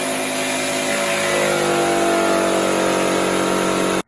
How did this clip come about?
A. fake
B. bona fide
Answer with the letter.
B